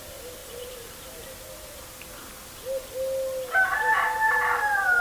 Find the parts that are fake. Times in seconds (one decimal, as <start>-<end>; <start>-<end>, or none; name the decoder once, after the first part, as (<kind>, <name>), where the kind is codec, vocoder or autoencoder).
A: 0.4-1.8 (vocoder, BigVGAN v2)